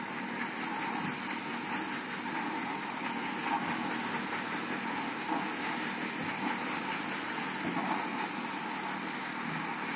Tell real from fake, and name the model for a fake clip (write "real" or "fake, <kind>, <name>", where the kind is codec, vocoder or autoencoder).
real